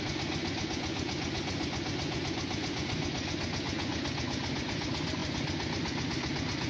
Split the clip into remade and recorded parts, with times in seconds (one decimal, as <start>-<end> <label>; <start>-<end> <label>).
0.0-6.7 remade